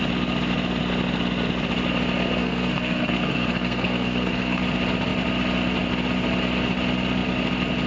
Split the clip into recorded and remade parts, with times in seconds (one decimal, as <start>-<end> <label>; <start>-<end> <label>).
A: 0.0-2.4 recorded; 2.4-4.6 remade; 4.6-7.9 recorded